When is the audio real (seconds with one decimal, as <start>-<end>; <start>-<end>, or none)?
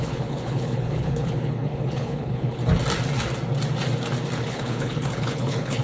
2.6-4.4